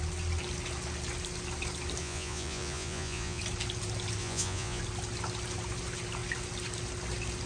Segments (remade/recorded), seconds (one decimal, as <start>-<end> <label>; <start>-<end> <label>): 0.0-2.0 recorded; 2.0-3.4 remade; 3.4-4.2 recorded; 4.2-4.8 remade; 4.8-7.5 recorded